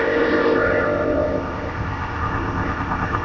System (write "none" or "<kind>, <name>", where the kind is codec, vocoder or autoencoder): codec, ZipCodec